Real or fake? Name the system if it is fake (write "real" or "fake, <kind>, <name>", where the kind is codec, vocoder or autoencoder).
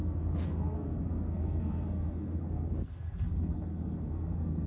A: fake, codec, SNAC